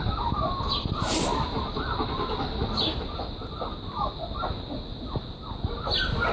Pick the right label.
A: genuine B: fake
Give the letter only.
A